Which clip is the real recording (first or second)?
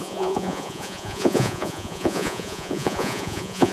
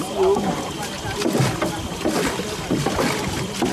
second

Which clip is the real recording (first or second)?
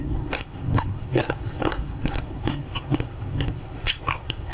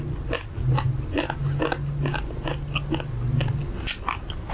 second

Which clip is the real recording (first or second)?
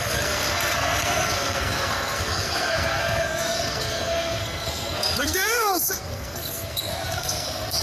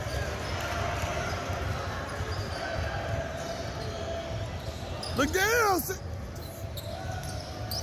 second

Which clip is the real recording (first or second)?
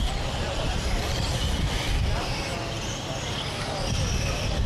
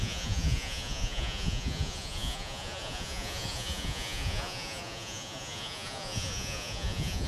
first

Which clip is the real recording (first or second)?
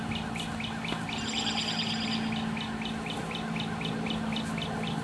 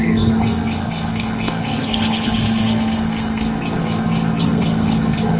first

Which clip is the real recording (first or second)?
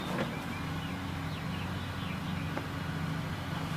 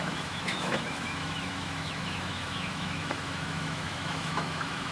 first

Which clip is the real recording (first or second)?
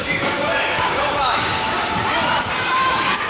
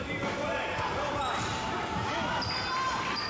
second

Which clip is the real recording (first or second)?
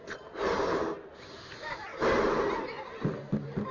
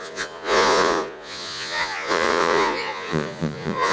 first